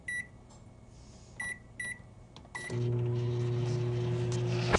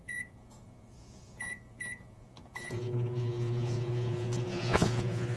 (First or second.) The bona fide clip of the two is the first